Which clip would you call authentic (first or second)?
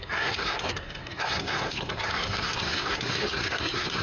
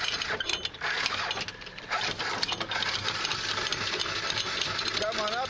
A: second